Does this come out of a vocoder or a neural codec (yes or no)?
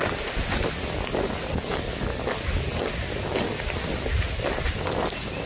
no